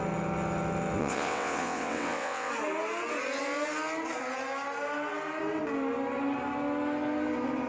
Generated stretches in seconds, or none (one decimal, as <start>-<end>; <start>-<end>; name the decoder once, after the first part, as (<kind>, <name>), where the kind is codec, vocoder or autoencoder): 1.0-2.5 (vocoder, WaveNeXt)